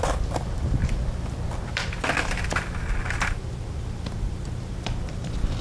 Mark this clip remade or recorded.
remade